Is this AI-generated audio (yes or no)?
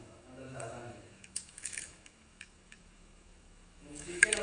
yes